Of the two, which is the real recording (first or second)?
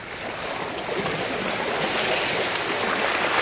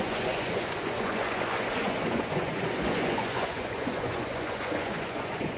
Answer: first